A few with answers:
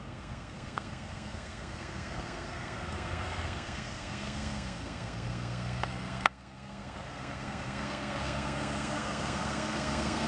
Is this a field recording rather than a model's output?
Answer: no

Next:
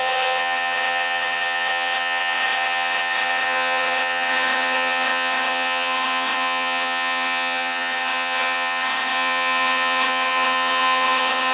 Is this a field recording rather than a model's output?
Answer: no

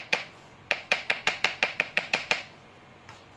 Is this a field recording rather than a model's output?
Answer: no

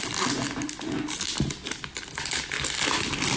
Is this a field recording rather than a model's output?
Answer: yes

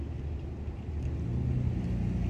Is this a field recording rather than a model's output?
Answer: yes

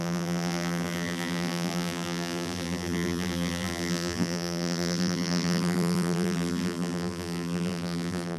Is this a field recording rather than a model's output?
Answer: no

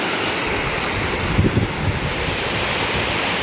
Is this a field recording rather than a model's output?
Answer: yes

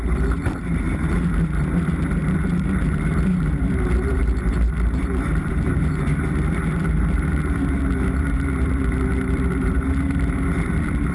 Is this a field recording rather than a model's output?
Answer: no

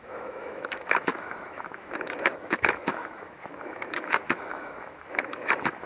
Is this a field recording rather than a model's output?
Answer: no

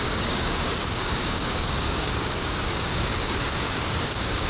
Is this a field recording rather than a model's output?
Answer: no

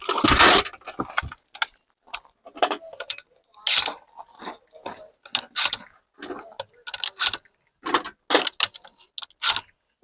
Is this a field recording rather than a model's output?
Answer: yes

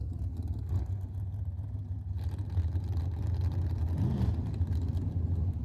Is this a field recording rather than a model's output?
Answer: yes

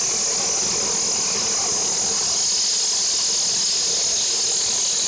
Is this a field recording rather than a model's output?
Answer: yes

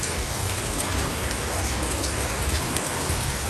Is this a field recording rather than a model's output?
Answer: no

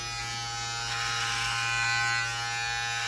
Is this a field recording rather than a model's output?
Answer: yes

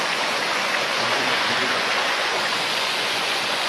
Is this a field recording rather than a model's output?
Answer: no